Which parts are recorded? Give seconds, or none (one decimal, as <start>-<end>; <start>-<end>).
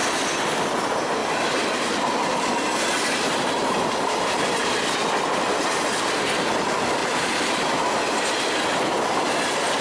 0.0-9.8